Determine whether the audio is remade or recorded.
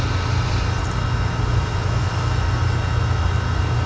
recorded